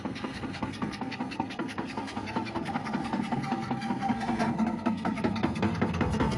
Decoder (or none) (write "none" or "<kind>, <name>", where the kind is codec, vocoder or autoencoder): codec, SNAC